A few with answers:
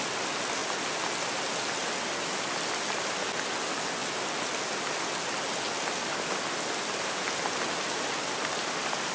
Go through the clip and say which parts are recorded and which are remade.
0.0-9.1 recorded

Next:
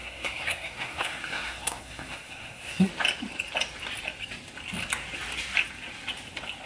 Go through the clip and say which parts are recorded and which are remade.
0.0-2.9 remade; 2.9-6.7 recorded